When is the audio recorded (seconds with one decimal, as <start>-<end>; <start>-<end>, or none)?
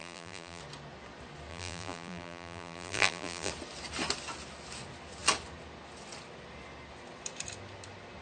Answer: 0.6-1.5; 3.5-8.2